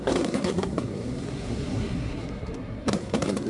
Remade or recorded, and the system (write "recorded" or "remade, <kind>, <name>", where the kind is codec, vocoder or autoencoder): remade, codec, SNAC